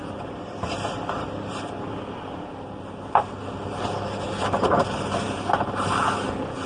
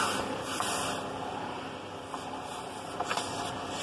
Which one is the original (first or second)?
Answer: first